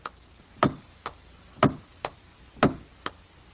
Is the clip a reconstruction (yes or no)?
no